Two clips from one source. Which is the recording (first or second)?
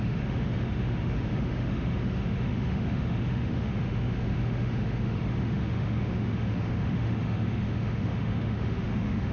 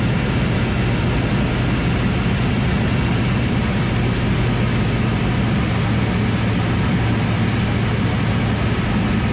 second